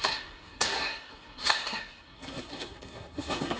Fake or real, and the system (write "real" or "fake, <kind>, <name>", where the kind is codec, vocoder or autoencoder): fake, codec, SNAC